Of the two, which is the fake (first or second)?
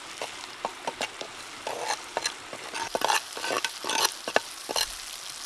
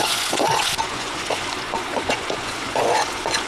second